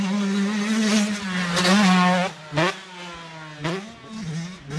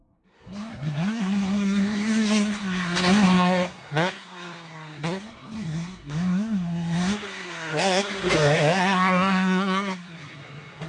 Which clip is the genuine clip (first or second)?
first